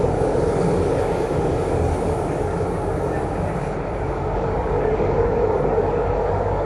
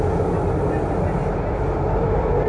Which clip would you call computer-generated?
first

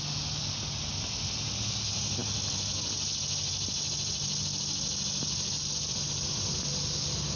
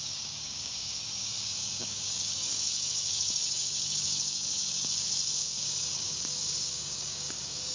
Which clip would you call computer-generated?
second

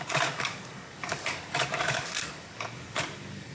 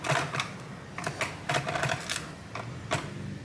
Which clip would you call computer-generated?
first